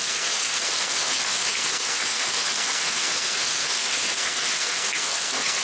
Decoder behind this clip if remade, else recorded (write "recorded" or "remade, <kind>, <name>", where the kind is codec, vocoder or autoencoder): remade, codec, SNAC